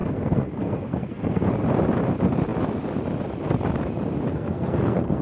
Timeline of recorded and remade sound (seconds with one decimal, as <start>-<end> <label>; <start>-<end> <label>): 0.0-1.5 remade; 1.5-4.3 recorded; 4.3-5.2 remade

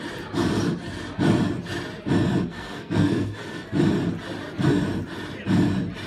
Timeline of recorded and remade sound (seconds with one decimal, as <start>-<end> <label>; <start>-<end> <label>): 0.0-2.5 recorded; 2.5-3.8 remade; 3.8-6.1 recorded

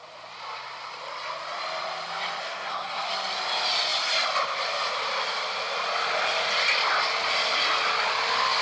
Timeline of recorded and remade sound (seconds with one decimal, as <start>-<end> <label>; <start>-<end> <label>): 0.0-2.4 recorded; 2.4-3.1 remade; 3.1-8.6 recorded

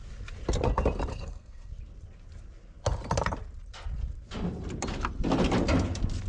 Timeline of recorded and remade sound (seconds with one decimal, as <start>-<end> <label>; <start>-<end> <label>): 0.0-1.1 recorded; 1.1-1.7 remade; 1.7-6.3 recorded

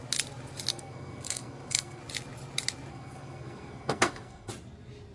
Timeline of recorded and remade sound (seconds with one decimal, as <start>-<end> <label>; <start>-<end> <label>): 0.0-0.7 recorded; 0.7-2.0 remade; 2.0-2.9 recorded; 2.9-4.5 remade; 4.5-5.1 recorded